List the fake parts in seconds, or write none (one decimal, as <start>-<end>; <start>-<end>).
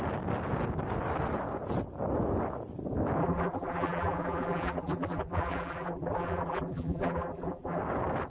3.2-7.8